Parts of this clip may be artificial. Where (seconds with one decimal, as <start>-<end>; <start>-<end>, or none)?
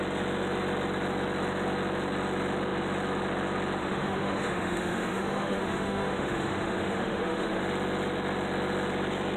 3.8-7.6